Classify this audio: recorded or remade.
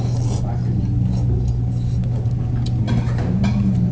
recorded